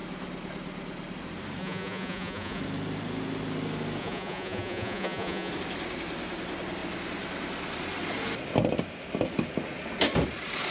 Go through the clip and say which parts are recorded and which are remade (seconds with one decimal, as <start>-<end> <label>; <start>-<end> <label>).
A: 0.0-1.6 recorded; 1.6-2.6 remade; 2.6-4.0 recorded; 4.0-5.5 remade; 5.5-10.7 recorded